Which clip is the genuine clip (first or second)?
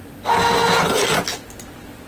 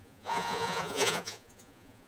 first